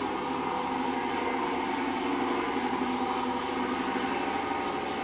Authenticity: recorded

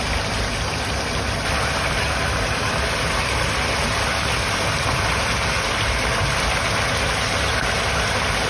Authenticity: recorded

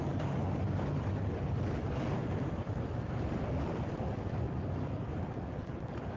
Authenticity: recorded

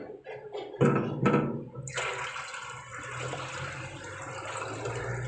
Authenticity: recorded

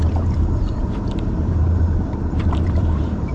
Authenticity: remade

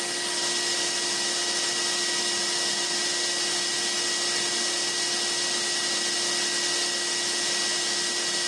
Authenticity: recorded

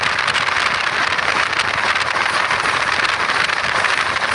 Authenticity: recorded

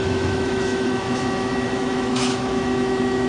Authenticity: remade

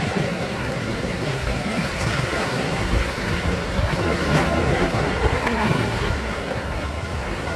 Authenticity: remade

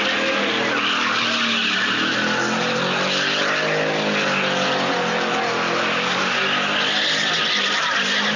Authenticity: recorded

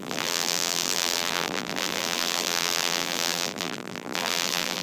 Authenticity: remade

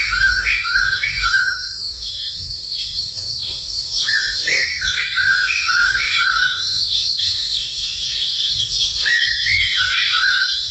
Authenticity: remade